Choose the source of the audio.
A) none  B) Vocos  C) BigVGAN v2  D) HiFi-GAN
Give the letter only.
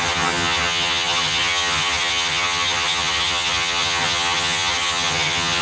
D